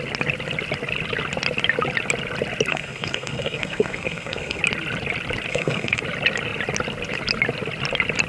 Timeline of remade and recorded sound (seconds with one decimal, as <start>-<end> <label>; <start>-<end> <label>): 0.0-2.7 recorded; 2.7-4.6 remade; 4.6-5.5 recorded; 5.5-6.0 remade; 6.0-8.3 recorded